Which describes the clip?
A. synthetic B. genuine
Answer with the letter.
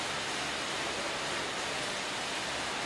B